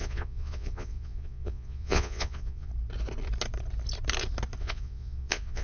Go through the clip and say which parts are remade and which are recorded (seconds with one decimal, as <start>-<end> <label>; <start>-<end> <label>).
0.0-2.7 remade; 2.7-4.6 recorded; 4.6-5.6 remade